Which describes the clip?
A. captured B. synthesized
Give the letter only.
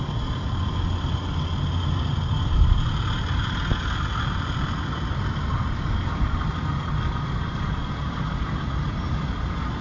A